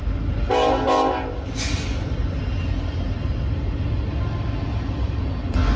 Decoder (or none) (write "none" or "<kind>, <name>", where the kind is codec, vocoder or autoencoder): none